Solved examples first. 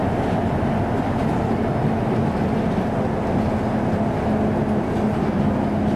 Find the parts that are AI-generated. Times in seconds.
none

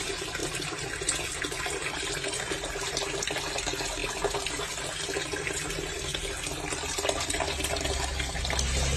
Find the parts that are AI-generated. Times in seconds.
none

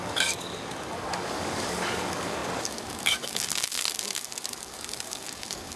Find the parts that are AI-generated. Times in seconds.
0.0-5.8 (codec, DAC)

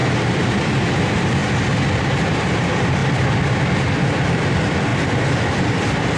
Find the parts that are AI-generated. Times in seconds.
0.0-1.4 (vocoder, BigVGAN v2); 2.0-3.0; 4.3-4.9; 5.5-6.2

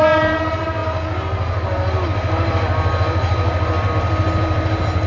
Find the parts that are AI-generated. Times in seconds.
none

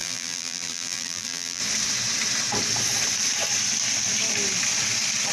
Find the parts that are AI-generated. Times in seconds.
0.0-1.6 (vocoder, BigVGAN v2)

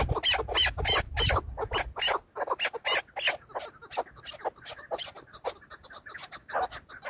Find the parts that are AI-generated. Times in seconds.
none

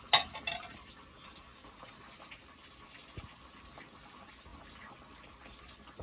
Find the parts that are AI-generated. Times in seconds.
none